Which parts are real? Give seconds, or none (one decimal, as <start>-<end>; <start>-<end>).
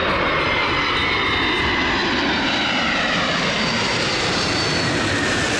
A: 0.0-2.0; 4.8-5.6